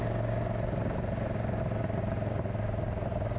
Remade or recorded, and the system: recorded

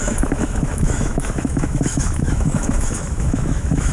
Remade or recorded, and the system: remade, autoencoder, DAC-VAE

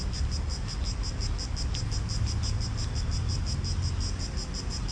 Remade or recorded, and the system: recorded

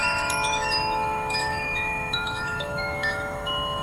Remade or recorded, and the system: remade, autoencoder, DAC-VAE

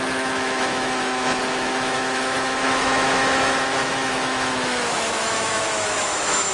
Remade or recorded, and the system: remade, autoencoder, DAC-VAE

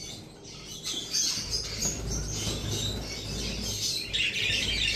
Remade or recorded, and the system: recorded